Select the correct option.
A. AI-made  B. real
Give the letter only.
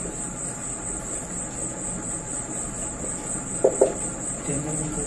B